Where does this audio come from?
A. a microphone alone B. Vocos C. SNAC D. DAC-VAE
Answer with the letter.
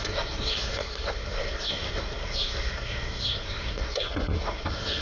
C